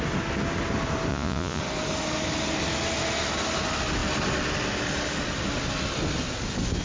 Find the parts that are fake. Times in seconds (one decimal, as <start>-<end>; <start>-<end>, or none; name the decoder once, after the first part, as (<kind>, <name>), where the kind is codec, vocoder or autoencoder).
1.1-1.6 (vocoder, Vocos)